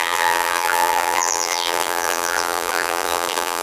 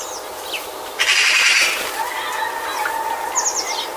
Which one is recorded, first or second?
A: second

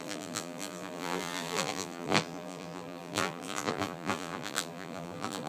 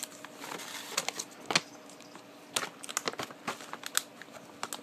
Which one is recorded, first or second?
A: second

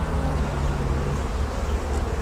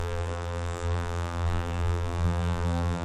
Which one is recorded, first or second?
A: first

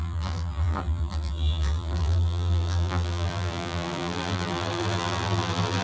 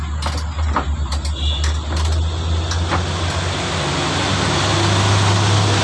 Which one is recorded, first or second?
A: second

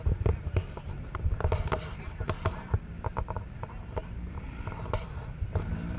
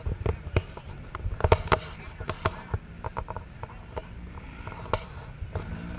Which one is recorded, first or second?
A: second